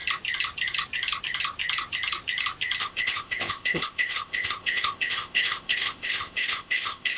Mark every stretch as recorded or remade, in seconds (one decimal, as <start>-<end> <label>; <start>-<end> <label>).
0.0-2.8 recorded; 2.8-7.2 remade